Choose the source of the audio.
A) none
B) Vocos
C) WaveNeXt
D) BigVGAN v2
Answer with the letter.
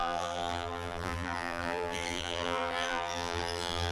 D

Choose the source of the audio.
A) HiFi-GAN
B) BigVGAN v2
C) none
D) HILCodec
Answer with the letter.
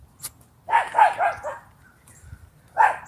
C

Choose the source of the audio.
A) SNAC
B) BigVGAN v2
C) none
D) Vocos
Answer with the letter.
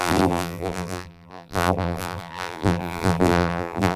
B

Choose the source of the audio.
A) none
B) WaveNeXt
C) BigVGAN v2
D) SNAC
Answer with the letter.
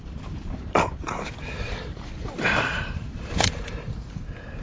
C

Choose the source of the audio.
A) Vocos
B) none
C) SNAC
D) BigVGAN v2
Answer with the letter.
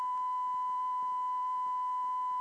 B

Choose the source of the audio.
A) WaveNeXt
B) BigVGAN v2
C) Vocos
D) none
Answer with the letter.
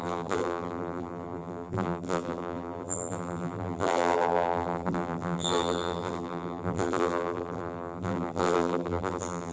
B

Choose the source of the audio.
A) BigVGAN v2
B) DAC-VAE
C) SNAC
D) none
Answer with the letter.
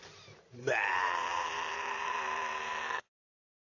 A